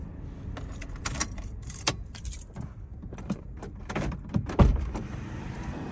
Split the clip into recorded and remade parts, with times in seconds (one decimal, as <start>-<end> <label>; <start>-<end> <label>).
0.0-1.2 recorded; 1.2-2.2 remade; 2.2-2.9 recorded; 2.9-4.1 remade; 4.1-4.7 recorded; 4.7-5.9 remade